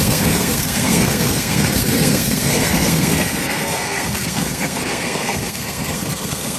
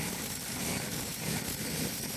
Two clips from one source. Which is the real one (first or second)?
second